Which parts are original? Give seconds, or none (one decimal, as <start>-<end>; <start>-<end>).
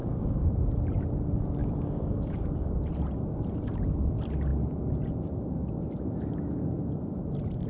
0.5-1.6; 2.7-7.7